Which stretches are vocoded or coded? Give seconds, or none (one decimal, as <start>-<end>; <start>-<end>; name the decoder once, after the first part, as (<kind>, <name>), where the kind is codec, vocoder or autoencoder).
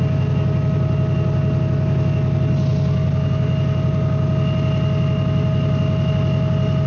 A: none